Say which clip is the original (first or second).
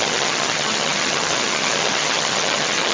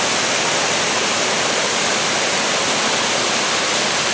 second